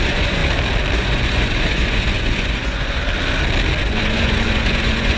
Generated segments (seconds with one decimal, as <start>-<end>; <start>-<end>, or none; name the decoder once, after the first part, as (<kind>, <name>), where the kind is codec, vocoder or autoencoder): 0.0-0.4 (vocoder, Vocos); 1.0-3.0; 3.8-5.2